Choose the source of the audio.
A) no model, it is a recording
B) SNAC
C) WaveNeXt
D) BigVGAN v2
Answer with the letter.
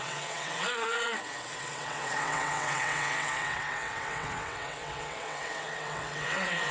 C